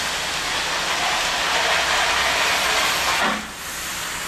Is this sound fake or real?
real